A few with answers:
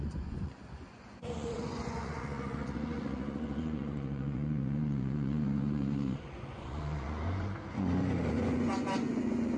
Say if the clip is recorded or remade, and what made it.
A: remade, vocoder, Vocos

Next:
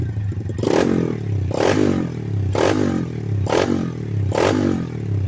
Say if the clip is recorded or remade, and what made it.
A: recorded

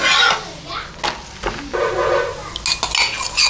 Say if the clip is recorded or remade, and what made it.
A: recorded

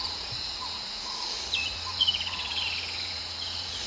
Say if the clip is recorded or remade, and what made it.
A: remade, vocoder, Vocos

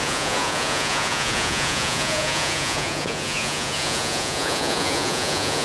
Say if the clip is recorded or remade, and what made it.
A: remade, vocoder, Vocos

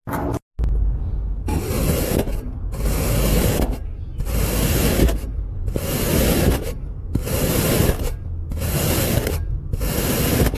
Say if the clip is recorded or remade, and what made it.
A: recorded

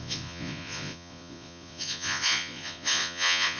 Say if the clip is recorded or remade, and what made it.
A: remade, vocoder, Vocos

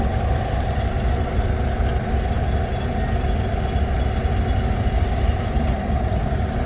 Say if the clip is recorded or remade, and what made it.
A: recorded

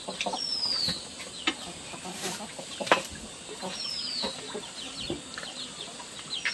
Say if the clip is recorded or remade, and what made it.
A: recorded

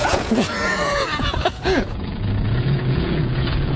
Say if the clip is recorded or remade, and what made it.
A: remade, vocoder, Vocos